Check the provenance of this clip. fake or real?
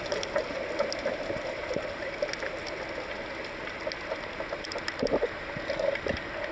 real